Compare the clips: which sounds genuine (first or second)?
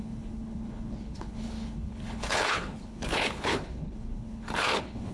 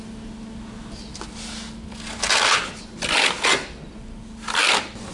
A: second